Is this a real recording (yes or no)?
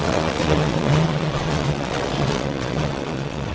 no